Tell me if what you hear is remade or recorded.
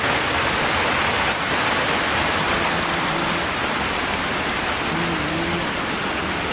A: recorded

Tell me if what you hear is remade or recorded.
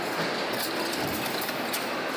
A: recorded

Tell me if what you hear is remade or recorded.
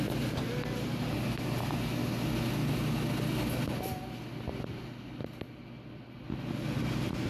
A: recorded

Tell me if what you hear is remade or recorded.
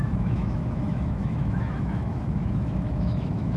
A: remade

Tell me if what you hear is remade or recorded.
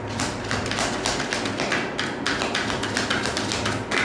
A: recorded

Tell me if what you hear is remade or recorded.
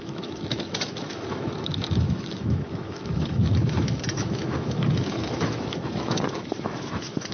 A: remade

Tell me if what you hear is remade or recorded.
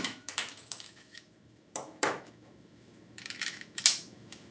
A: remade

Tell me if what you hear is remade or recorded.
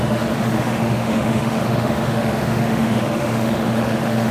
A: remade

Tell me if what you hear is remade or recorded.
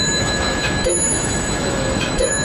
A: remade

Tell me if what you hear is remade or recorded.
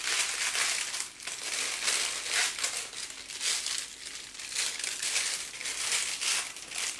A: recorded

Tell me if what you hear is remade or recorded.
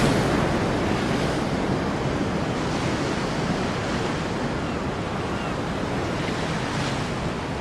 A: recorded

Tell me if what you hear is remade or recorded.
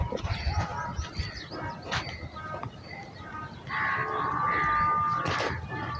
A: recorded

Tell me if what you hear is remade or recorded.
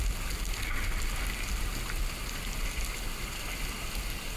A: recorded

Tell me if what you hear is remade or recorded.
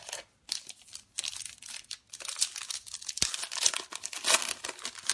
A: recorded